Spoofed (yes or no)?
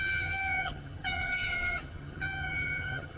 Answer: yes